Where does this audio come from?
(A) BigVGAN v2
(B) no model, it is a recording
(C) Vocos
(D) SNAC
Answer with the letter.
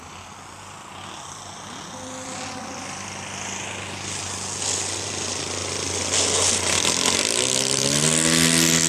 B